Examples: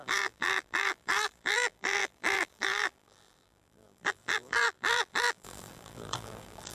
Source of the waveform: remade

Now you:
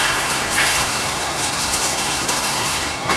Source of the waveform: remade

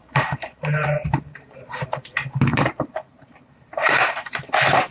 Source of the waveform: remade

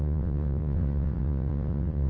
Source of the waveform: remade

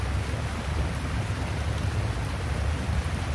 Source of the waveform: recorded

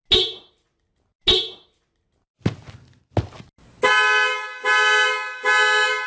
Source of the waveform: recorded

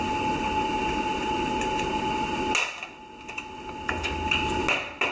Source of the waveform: recorded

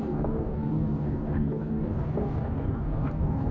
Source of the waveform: remade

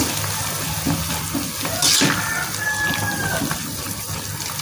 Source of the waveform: recorded